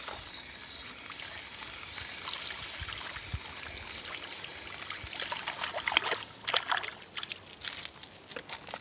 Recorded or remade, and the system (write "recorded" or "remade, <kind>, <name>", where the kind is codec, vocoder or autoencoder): recorded